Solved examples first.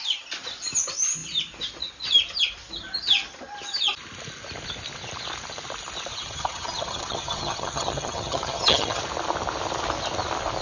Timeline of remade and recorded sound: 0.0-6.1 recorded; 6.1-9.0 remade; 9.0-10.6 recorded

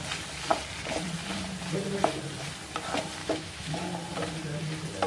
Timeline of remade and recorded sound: 0.0-3.2 recorded; 3.2-3.7 remade; 3.7-5.1 recorded